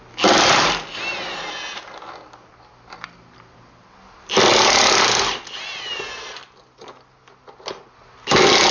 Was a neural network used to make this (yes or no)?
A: no